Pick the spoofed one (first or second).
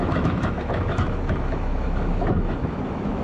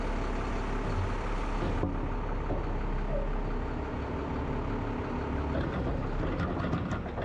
first